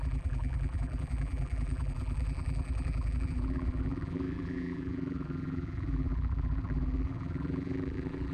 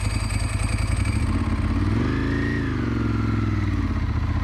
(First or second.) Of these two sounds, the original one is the second